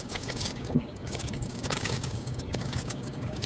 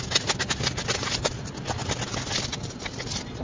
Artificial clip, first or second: first